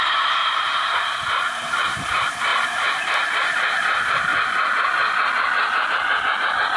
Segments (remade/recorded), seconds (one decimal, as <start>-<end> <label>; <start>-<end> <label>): 0.0-4.3 remade; 4.3-6.8 recorded